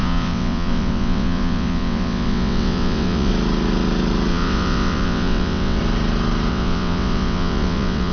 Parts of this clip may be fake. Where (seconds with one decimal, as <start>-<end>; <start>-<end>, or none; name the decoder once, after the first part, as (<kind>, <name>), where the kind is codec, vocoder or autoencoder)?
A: 0.0-3.3 (vocoder, WaveNeXt); 4.3-5.8; 6.5-8.1